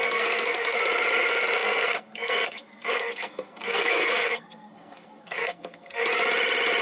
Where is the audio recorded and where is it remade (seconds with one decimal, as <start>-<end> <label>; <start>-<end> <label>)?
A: 0.0-6.0 remade; 6.0-6.8 recorded